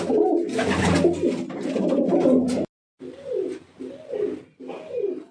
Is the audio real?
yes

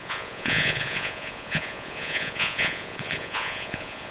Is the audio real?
no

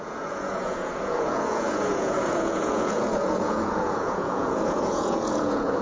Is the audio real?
no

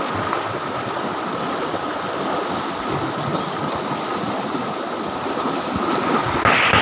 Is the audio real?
yes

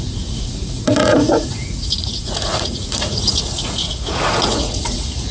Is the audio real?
no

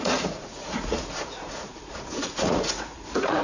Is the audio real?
no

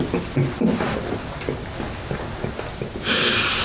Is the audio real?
yes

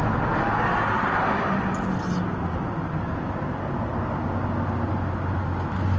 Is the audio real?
yes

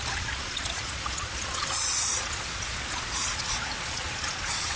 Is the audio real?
no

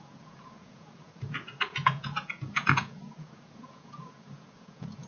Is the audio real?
no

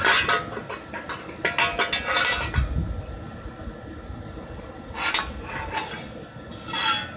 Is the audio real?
yes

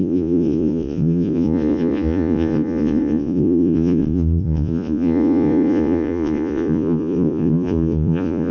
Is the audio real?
no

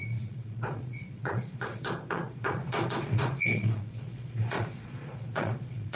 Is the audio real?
no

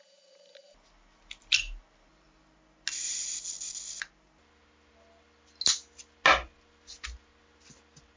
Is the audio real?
yes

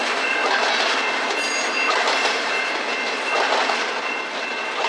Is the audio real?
yes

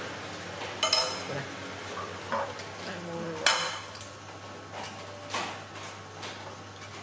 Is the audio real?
yes